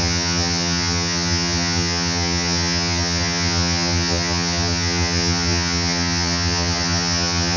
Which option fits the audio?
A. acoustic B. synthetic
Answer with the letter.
B